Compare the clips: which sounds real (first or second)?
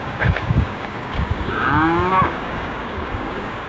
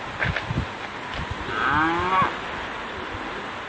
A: second